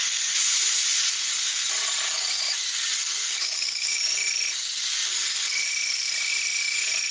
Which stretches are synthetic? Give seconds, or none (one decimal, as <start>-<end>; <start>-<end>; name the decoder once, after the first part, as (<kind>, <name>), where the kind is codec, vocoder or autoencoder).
3.0-4.0 (codec, DAC)